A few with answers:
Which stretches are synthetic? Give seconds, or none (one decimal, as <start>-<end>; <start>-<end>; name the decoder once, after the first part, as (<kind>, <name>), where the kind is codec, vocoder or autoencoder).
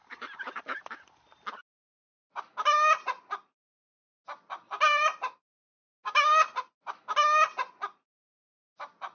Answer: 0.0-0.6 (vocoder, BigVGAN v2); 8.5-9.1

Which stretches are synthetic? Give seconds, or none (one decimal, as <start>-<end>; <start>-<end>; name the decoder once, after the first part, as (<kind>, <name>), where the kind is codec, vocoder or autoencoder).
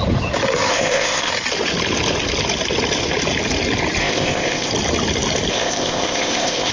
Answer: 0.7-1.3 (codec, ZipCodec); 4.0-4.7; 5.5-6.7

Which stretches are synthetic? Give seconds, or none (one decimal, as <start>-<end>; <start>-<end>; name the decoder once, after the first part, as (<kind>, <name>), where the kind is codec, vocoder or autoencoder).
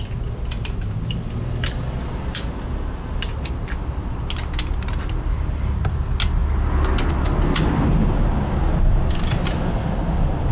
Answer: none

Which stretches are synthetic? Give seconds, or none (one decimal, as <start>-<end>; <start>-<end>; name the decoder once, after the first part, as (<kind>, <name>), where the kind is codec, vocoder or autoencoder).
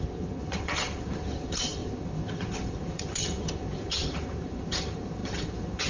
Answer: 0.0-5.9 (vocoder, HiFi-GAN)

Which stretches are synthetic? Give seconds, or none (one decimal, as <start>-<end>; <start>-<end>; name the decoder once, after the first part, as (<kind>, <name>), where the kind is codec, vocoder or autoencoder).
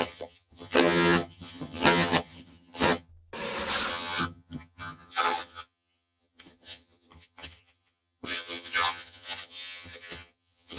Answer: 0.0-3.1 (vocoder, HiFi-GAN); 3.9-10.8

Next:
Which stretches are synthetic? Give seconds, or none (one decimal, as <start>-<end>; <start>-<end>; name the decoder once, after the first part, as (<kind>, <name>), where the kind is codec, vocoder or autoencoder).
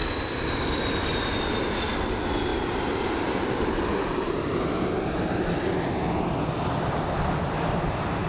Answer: none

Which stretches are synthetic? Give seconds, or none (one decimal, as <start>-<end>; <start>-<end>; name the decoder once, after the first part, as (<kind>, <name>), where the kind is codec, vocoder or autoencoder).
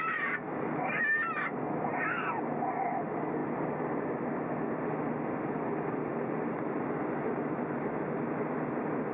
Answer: none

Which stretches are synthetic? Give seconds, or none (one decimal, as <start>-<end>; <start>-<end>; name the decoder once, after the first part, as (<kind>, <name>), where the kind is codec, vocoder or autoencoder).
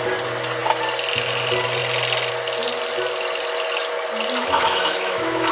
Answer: 4.4-5.5 (autoencoder, DAC-VAE)